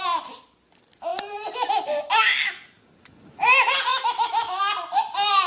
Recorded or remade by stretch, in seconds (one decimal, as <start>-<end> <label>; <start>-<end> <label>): 0.0-3.9 recorded; 3.9-4.6 remade; 4.6-5.5 recorded